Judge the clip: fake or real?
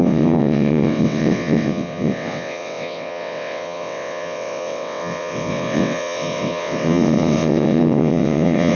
fake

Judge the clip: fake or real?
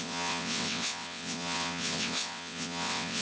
fake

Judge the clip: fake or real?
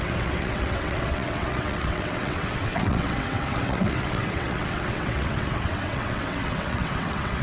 fake